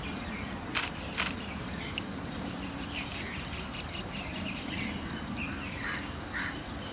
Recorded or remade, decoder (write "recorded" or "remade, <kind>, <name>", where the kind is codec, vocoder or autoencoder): remade, vocoder, BigVGAN v2